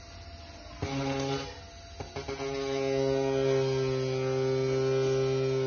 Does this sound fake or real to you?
real